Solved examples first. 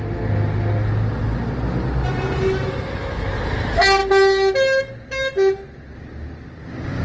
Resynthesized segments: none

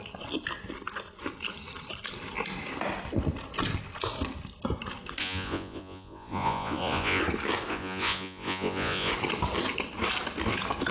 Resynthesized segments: 5.2-7.2 (vocoder, Vocos); 7.7-9.1

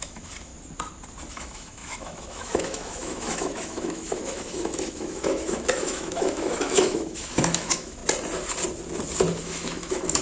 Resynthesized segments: 0.0-0.5 (autoencoder, DAC-VAE); 1.3-8.0; 9.4-10.2

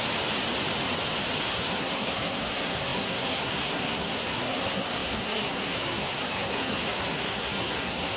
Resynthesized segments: 1.4-8.2 (codec, SNAC)

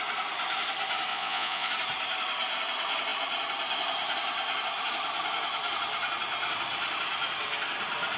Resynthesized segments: 1.1-1.7 (vocoder, Vocos)

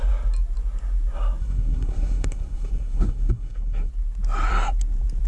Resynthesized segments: 1.4-3.9 (codec, SNAC)